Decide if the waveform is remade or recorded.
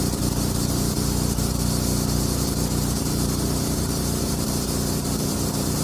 remade